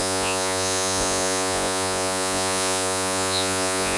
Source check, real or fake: fake